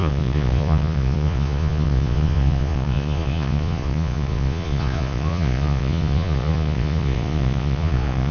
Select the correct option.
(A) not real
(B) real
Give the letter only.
A